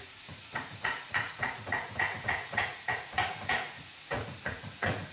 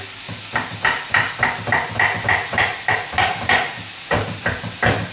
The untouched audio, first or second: second